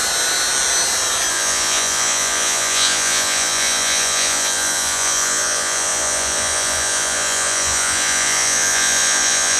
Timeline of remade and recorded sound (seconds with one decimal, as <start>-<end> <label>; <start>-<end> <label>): 0.0-1.3 recorded; 1.3-9.6 remade